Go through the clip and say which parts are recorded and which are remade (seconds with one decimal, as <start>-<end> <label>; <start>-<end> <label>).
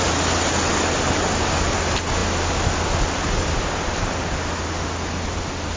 0.0-5.8 recorded